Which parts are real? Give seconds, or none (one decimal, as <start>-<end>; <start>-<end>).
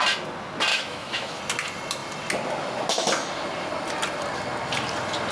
0.0-0.7; 1.4-5.3